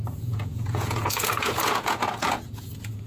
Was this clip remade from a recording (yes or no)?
yes